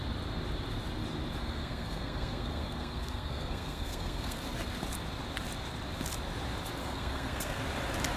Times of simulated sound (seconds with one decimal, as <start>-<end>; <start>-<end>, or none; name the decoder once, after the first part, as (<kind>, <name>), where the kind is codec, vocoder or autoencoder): 1.4-4.4 (codec, SNAC); 6.8-7.6